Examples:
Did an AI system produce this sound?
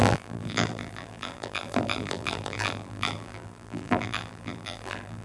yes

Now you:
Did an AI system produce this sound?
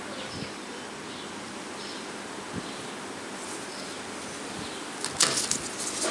no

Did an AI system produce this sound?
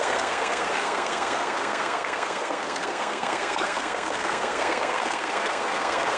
yes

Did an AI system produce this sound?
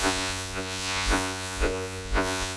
yes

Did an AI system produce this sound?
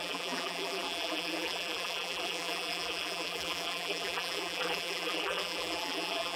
yes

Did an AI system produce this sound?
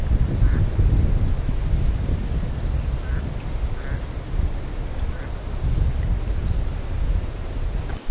no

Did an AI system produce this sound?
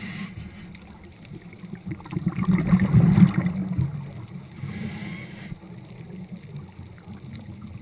no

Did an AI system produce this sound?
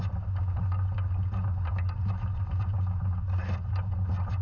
no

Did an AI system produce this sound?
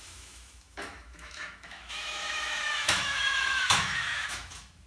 yes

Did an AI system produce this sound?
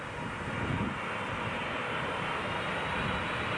no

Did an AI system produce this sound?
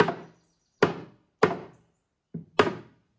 no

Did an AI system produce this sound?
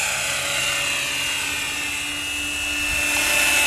no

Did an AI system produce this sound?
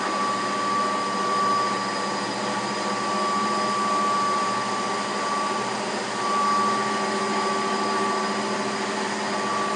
no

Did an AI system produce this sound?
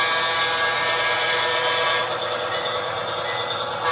no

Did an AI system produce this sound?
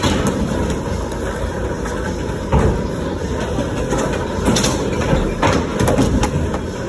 no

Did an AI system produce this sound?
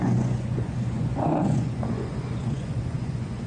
yes